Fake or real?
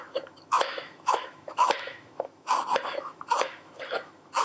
fake